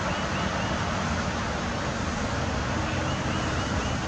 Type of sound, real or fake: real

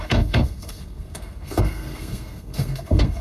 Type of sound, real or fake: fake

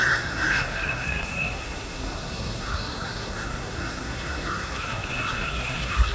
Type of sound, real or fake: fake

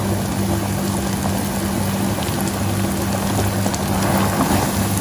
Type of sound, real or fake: real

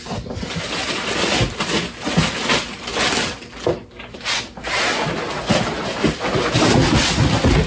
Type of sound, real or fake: real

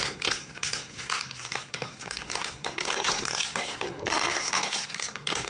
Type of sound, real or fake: fake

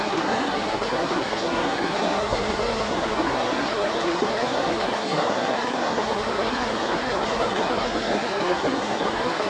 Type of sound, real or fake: fake